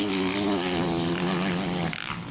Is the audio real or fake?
real